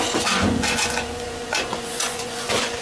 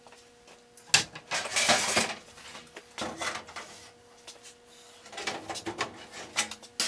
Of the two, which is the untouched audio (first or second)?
second